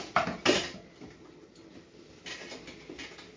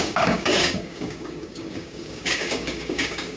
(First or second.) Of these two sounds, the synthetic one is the second